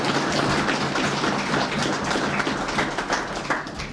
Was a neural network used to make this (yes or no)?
no